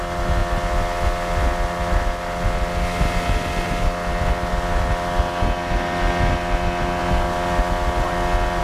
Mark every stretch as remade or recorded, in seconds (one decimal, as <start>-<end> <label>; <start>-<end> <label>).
0.0-8.6 recorded

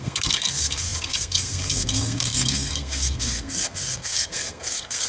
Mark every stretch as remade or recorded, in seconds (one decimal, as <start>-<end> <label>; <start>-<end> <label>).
0.0-5.1 remade